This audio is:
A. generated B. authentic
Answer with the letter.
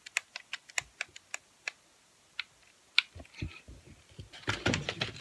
B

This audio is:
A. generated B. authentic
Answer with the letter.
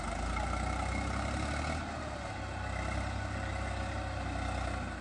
B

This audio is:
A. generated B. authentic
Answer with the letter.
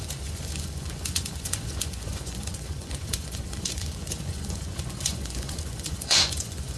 A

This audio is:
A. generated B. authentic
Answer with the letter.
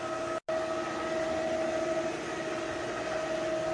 B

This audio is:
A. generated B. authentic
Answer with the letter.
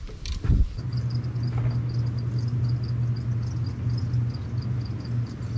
B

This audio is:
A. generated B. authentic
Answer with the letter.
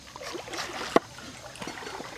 B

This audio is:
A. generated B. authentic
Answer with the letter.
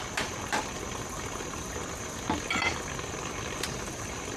B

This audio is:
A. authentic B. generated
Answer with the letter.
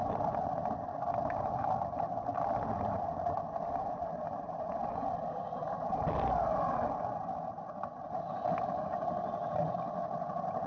A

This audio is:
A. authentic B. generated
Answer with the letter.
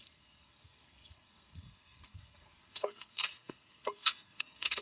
B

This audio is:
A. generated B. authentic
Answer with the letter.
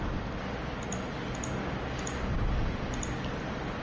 B